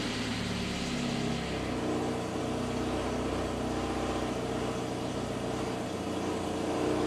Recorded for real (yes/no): yes